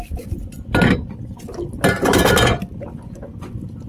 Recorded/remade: recorded